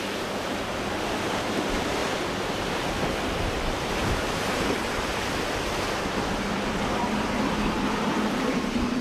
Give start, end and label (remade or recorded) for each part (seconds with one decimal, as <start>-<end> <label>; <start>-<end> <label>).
0.0-2.0 remade; 2.0-3.0 recorded; 3.0-5.1 remade; 5.1-7.9 recorded; 7.9-9.0 remade